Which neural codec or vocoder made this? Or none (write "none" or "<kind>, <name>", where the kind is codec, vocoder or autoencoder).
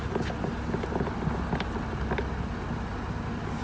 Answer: none